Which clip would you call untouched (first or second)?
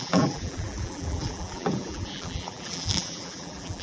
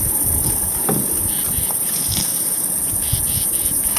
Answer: second